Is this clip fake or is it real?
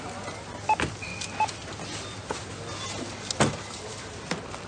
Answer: real